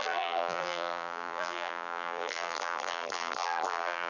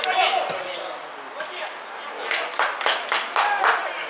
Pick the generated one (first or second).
first